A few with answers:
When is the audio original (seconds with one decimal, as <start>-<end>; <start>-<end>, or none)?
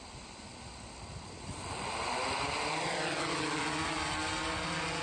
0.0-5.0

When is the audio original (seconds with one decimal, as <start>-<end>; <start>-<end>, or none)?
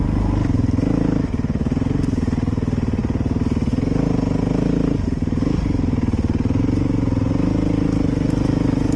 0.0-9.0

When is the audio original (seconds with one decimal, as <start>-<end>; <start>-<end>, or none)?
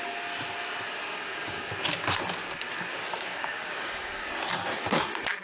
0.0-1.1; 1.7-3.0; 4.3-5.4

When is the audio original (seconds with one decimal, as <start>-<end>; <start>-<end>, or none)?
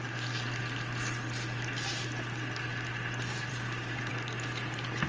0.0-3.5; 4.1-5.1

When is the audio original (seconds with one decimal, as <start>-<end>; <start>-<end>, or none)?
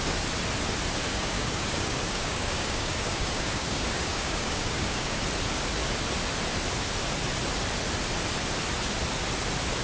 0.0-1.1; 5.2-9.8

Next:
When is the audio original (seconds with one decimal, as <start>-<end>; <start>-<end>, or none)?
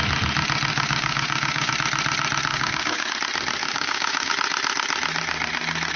0.0-0.7; 1.7-2.5; 3.1-3.6; 4.3-6.0